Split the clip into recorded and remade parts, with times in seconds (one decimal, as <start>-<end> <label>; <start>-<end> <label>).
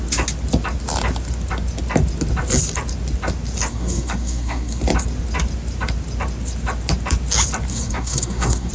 0.0-3.7 recorded; 3.7-4.8 remade; 4.8-7.7 recorded; 7.7-8.7 remade